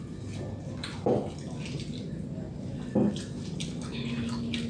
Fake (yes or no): no